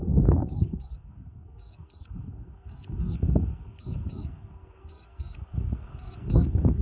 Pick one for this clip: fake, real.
fake